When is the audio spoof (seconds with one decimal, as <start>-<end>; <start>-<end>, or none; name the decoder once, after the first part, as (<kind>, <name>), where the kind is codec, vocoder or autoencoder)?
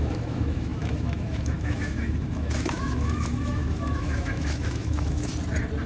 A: 0.0-5.3 (autoencoder, DAC-VAE)